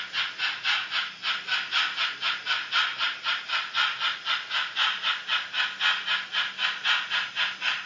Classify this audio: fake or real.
real